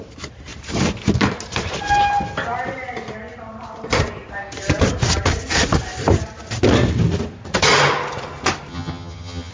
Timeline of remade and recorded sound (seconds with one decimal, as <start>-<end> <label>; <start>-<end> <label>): 0.0-8.7 recorded; 8.7-9.5 remade